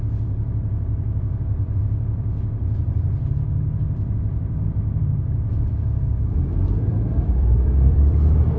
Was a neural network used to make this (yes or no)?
yes